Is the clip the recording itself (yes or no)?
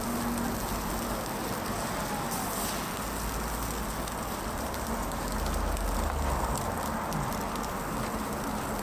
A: yes